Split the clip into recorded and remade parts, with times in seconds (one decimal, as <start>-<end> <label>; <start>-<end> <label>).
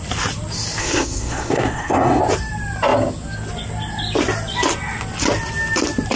0.0-0.8 recorded; 0.8-2.2 remade; 2.2-6.2 recorded